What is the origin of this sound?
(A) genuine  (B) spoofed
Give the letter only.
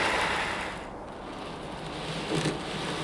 A